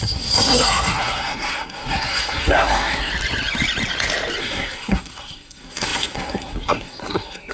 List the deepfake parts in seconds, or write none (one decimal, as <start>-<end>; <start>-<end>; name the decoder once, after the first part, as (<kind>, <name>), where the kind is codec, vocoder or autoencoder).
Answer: 0.0-3.1 (codec, SNAC); 4.4-7.5